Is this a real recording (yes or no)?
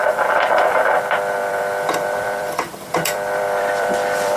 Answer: no